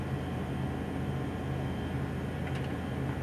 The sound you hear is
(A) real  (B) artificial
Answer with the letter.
A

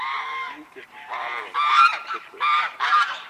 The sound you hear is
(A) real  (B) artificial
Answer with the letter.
B